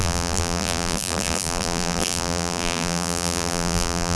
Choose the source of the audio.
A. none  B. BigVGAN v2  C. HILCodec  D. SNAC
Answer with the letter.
B